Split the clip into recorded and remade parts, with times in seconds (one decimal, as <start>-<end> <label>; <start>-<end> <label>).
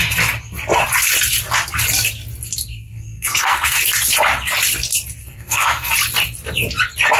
0.0-2.7 recorded; 2.7-3.8 remade; 3.8-5.2 recorded; 5.2-5.9 remade; 5.9-7.2 recorded